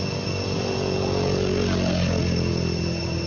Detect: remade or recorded recorded